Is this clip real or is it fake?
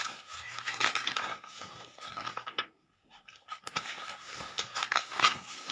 fake